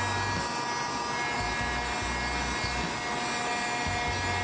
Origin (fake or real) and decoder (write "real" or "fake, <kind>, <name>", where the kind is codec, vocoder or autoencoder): real